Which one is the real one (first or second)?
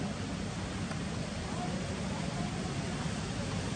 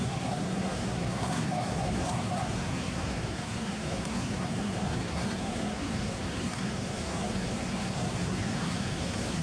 first